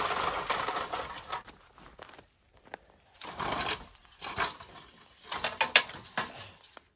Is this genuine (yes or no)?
yes